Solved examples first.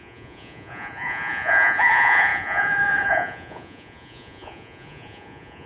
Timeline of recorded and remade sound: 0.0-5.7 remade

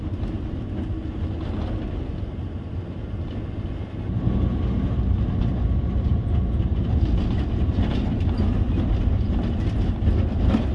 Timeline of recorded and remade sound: 0.0-10.7 recorded

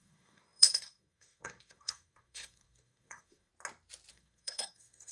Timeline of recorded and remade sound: 0.0-3.5 remade; 3.5-4.1 recorded; 4.1-5.1 remade

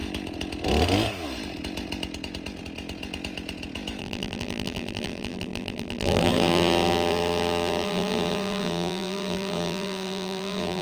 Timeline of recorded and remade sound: 0.0-4.0 recorded; 4.0-10.8 remade

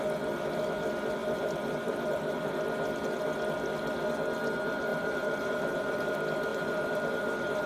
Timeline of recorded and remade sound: 0.0-1.2 recorded; 1.2-2.5 remade; 2.5-4.9 recorded; 4.9-6.1 remade; 6.1-6.5 recorded; 6.5-7.7 remade

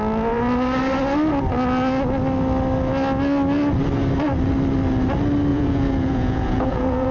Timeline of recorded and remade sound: 0.0-5.5 recorded; 5.5-7.1 remade

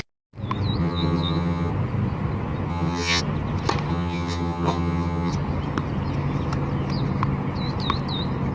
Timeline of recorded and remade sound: 0.0-0.8 recorded; 0.8-1.7 remade; 1.7-2.7 recorded; 2.7-3.2 remade; 3.2-3.9 recorded; 3.9-5.3 remade; 5.3-8.5 recorded

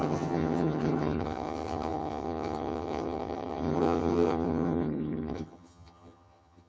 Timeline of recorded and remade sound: 0.0-6.7 remade